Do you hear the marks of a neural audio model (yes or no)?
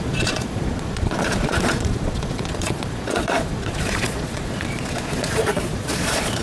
yes